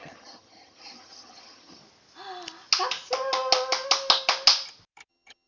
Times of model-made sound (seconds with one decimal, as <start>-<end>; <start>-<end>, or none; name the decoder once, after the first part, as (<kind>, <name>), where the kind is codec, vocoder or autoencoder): 0.0-1.8 (vocoder, HiFi-GAN); 5.1-5.5